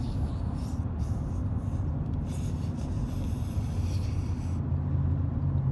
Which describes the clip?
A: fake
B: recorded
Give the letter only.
B